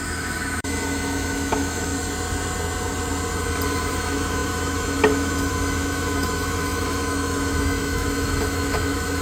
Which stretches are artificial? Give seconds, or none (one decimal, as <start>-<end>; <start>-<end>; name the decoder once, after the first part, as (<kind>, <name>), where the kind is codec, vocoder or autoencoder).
0.0-1.9 (autoencoder, DAC-VAE); 3.8-9.2